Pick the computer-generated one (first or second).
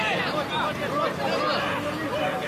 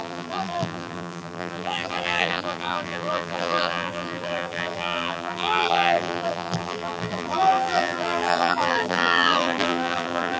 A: second